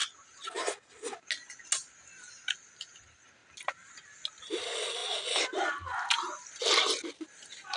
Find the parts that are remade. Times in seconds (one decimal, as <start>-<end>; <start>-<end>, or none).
none